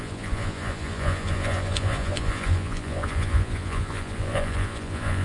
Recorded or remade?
remade